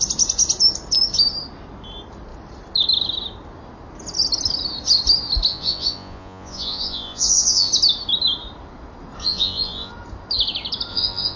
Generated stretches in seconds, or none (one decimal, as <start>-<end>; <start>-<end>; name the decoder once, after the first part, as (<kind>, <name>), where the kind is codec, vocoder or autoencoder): 5.5-7.7 (vocoder, Vocos); 9.2-9.9; 10.9-11.4